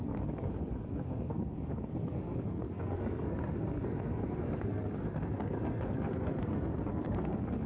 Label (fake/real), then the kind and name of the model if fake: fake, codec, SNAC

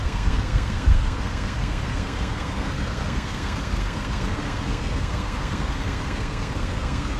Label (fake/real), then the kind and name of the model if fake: fake, codec, SNAC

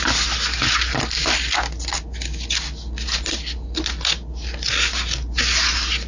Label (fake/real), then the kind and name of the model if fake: real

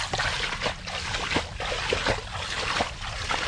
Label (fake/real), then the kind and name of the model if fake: real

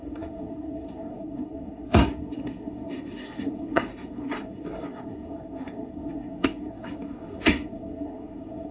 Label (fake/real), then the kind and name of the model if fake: fake, codec, SNAC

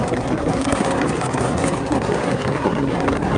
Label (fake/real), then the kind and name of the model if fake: fake, codec, SNAC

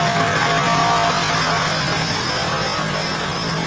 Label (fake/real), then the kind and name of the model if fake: real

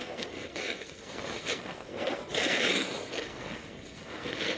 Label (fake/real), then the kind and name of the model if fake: fake, codec, SNAC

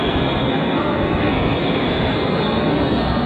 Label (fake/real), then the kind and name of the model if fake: fake, codec, SNAC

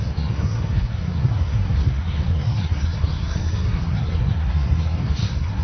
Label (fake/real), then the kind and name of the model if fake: fake, codec, SNAC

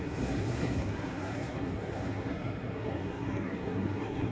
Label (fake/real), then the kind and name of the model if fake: fake, codec, SNAC